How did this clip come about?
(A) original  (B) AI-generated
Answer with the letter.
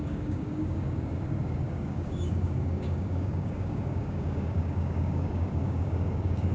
B